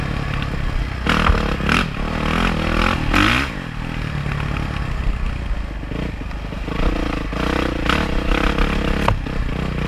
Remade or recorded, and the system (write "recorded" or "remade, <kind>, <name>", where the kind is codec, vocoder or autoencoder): recorded